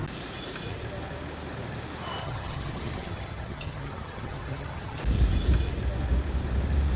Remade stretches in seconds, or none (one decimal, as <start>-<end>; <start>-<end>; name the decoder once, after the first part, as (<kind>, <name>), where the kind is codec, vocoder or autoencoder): 2.2-5.0 (vocoder, HiFi-GAN)